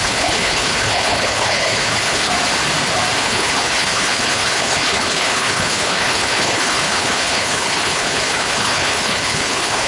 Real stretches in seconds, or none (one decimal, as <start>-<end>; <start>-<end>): 2.3-3.2